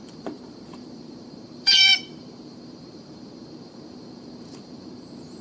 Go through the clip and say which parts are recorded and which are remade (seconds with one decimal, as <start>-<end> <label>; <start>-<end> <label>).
0.0-5.4 remade